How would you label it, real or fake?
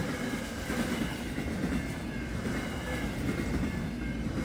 real